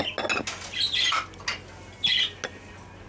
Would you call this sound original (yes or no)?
yes